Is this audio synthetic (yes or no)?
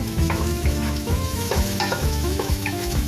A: yes